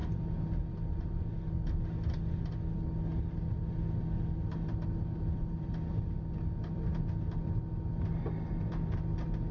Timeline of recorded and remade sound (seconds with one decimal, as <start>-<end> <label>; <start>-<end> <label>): 0.0-9.5 recorded